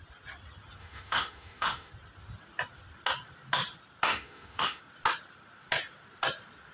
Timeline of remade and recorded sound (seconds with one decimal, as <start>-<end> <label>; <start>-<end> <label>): 0.0-0.8 recorded; 0.8-1.9 remade; 1.9-4.1 recorded; 4.1-4.8 remade; 4.8-6.7 recorded